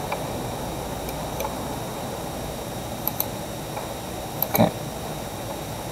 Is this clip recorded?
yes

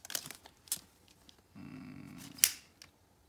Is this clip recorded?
yes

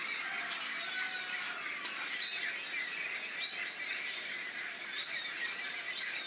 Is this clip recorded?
yes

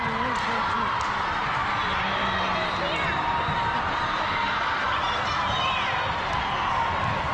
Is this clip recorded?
yes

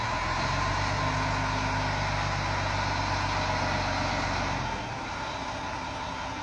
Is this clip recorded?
yes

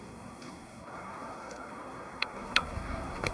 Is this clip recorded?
no